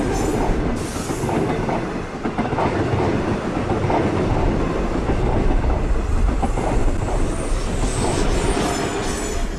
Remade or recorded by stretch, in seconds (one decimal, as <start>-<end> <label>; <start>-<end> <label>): 0.0-9.6 recorded